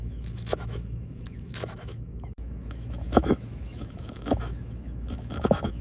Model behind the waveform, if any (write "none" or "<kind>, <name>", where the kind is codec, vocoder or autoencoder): autoencoder, DAC-VAE